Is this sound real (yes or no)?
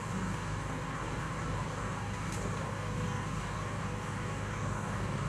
no